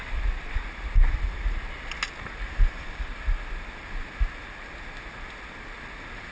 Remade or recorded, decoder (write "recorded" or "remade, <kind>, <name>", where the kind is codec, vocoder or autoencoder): recorded